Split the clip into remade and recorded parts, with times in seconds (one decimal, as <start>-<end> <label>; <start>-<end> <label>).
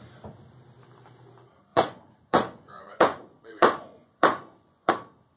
0.0-1.7 recorded; 1.7-4.9 remade; 4.9-5.4 recorded